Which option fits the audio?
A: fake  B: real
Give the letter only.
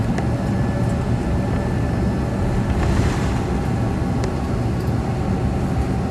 B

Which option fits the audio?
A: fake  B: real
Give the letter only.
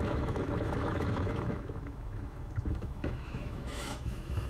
A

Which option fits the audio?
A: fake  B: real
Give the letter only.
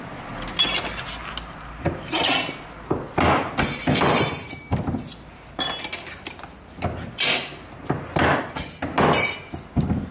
B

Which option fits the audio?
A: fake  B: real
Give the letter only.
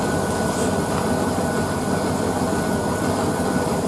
B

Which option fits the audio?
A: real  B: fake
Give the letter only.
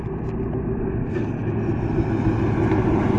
A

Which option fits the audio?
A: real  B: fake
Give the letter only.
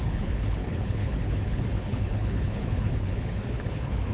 B